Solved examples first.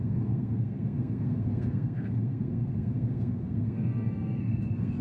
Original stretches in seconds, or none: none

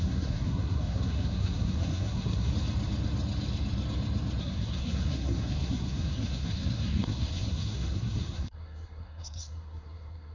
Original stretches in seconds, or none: 2.5-4.4

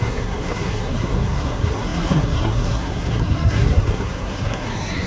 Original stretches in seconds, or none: none

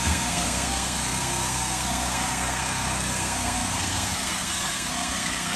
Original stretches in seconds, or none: none

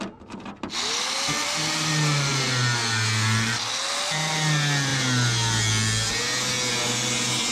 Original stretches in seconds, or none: 0.0-7.5